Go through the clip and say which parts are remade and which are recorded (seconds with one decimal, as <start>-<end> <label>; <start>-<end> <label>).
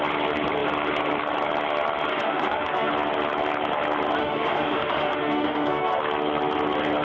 0.0-2.1 recorded; 2.1-2.9 remade; 2.9-4.2 recorded; 4.2-6.0 remade; 6.0-7.0 recorded